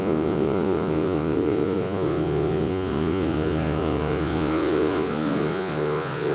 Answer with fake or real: fake